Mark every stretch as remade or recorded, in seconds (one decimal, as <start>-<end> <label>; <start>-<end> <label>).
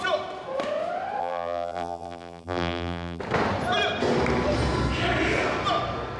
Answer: 0.0-1.2 recorded; 1.2-3.2 remade; 3.2-6.2 recorded